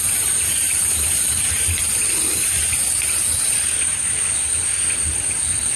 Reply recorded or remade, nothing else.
recorded